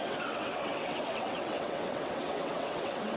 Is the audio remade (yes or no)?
yes